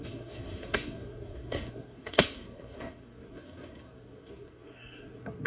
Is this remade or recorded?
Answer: remade